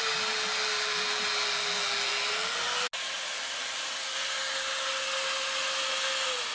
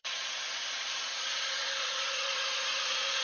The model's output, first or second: second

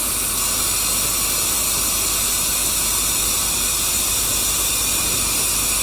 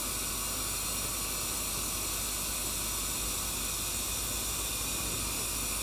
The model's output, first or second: first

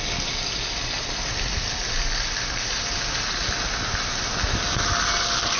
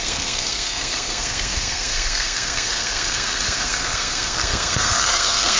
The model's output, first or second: second